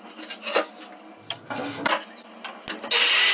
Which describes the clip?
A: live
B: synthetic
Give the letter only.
A